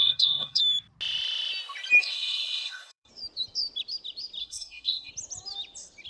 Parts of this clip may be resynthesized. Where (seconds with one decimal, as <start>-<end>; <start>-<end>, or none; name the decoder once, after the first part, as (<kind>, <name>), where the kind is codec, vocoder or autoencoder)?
0.0-0.6 (codec, SNAC); 2.0-3.1; 4.4-5.1